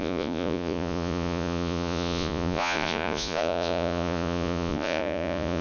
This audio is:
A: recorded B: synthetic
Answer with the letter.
B